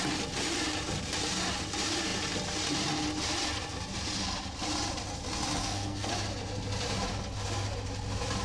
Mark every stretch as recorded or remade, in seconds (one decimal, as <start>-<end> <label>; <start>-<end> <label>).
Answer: 0.0-5.6 recorded; 5.6-6.1 remade; 6.1-8.4 recorded